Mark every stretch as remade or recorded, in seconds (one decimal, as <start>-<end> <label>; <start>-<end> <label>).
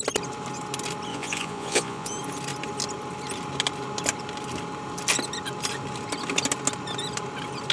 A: 0.0-1.1 recorded; 1.1-2.1 remade; 2.1-7.7 recorded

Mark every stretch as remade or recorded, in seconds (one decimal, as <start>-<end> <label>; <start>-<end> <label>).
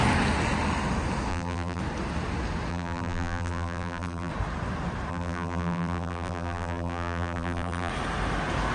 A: 0.0-1.3 recorded; 1.3-1.8 remade; 1.8-2.7 recorded; 2.7-4.3 remade; 4.3-5.1 recorded; 5.1-7.9 remade; 7.9-8.7 recorded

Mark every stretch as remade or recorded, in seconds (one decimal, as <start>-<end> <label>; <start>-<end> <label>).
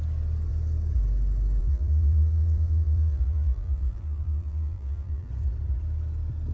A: 0.0-1.6 recorded; 1.6-5.3 remade; 5.3-6.5 recorded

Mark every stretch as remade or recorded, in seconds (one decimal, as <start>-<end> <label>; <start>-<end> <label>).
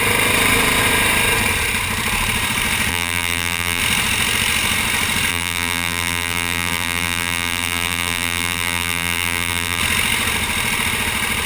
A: 0.0-2.9 recorded; 2.9-3.8 remade; 3.8-5.3 recorded; 5.3-9.8 remade; 9.8-11.5 recorded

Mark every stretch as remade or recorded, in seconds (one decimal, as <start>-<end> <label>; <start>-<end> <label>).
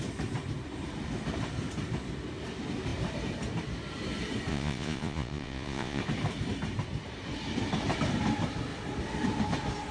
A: 0.0-4.5 recorded; 4.5-6.0 remade; 6.0-9.9 recorded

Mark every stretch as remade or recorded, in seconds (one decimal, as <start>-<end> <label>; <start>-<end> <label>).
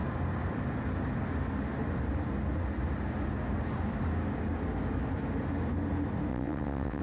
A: 0.0-6.3 recorded; 6.3-7.0 remade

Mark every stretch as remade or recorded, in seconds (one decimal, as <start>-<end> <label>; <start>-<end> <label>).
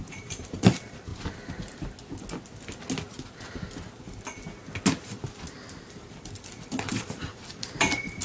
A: 0.0-1.1 remade; 1.1-5.8 recorded; 5.8-8.2 remade